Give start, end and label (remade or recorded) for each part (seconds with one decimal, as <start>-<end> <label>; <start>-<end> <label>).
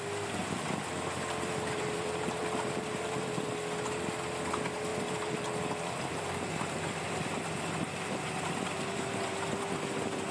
0.0-0.4 recorded; 0.4-3.5 remade; 3.5-4.9 recorded; 4.9-9.3 remade; 9.3-10.3 recorded